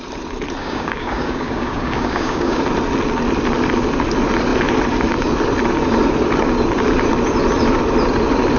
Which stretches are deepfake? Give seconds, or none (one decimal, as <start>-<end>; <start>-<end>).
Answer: 0.6-2.6